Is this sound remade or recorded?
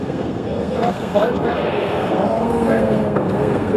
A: remade